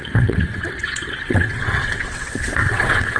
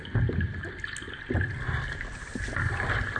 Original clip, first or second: second